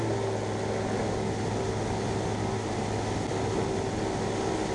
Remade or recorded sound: recorded